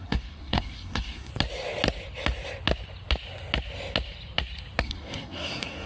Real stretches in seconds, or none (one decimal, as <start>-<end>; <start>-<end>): 1.3-4.8